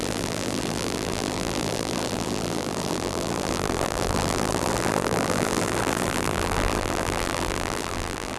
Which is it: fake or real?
fake